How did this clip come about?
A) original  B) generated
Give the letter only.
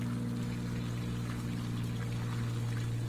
A